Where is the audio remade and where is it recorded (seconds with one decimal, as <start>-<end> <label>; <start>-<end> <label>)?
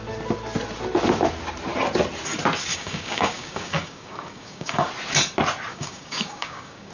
0.0-2.7 recorded; 2.7-4.9 remade; 4.9-5.7 recorded; 5.7-6.9 remade